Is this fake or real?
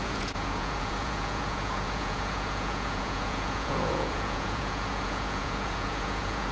fake